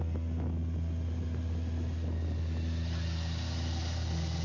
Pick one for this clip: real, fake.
real